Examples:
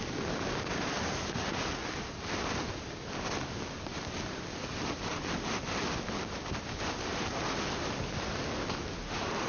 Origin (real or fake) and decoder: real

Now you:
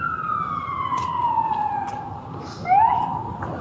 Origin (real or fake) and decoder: real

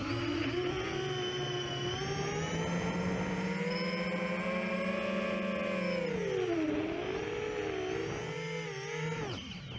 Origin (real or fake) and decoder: real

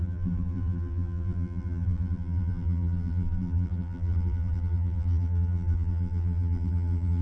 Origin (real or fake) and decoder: fake, vocoder, BigVGAN v2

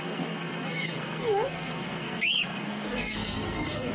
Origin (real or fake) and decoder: fake, codec, SNAC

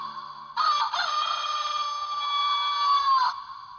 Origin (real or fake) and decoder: real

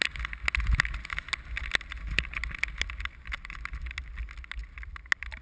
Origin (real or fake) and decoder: real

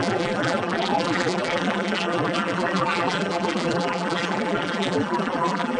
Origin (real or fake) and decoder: fake, vocoder, BigVGAN v2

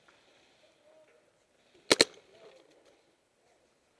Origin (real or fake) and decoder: real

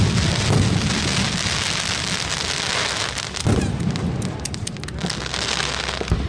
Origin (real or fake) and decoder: real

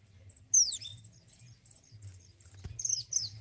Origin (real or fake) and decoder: real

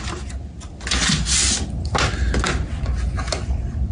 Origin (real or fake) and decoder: real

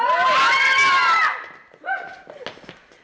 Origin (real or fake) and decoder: real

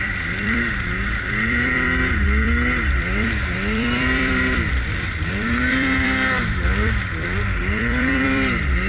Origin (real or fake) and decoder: fake, vocoder, BigVGAN v2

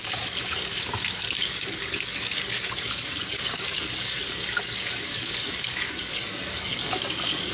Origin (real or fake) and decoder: fake, codec, DAC